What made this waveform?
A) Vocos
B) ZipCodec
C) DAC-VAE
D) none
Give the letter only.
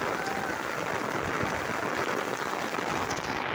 D